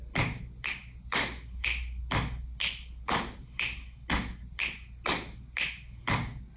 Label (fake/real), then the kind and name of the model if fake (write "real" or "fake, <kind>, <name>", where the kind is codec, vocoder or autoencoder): real